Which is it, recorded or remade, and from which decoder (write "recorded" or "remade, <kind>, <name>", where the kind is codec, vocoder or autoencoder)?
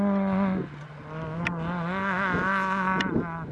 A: recorded